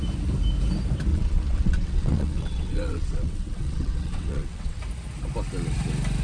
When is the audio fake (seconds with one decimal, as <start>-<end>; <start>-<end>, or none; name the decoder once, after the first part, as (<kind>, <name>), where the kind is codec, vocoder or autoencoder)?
1.1-4.8 (vocoder, WaveNeXt)